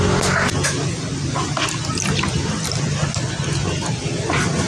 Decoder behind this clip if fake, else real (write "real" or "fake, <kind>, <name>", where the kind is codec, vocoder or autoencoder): real